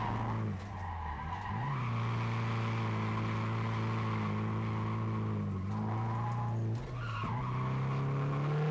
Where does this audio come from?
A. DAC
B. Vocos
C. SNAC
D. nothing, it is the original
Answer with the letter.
D